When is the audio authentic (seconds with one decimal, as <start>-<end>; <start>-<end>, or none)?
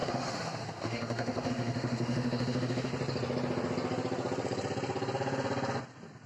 2.9-6.3